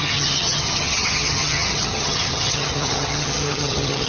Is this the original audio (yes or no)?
no